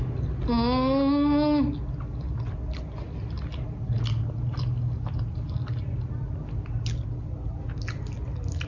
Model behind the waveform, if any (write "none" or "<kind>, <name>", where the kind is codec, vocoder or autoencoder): none